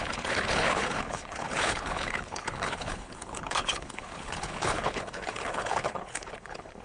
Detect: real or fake fake